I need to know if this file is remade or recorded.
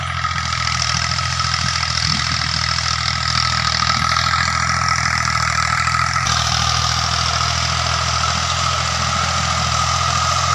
recorded